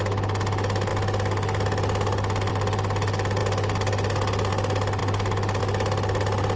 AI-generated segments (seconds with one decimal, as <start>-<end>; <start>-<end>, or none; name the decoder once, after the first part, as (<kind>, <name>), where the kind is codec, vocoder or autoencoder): none